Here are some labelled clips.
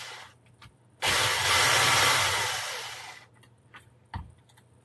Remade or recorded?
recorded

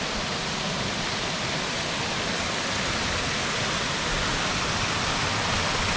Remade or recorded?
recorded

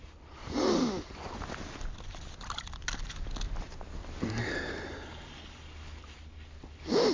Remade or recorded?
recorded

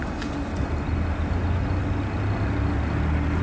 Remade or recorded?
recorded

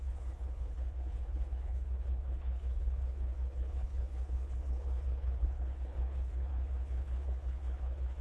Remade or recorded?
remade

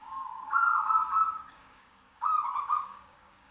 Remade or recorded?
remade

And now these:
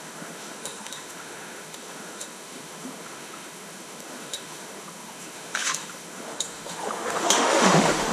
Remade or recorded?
remade